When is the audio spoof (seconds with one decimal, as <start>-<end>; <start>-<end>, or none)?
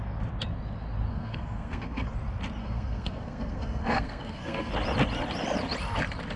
1.1-2.1; 2.6-4.7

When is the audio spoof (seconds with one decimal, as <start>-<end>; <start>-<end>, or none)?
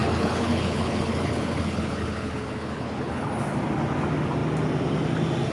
0.0-3.3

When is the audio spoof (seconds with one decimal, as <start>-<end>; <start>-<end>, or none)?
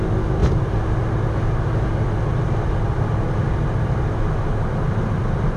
none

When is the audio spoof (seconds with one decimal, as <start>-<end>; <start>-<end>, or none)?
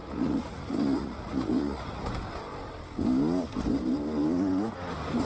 0.0-2.0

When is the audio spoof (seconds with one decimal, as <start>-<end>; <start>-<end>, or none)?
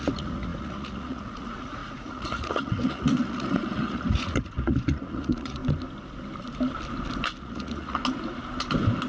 0.0-5.6; 7.4-8.0